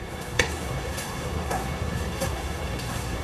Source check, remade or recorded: remade